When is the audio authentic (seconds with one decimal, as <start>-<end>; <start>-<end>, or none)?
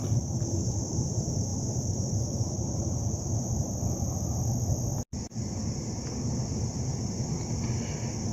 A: 0.0-8.3